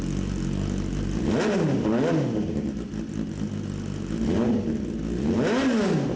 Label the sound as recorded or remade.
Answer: recorded